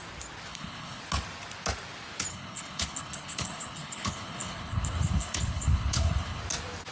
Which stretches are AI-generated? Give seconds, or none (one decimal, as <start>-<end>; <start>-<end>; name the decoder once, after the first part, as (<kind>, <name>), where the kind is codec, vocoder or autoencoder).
0.5-1.0 (codec, HILCodec); 2.3-6.4

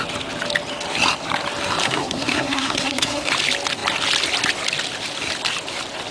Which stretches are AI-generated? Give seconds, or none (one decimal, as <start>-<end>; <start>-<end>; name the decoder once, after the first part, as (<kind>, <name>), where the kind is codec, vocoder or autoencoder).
1.8-3.3 (codec, SNAC)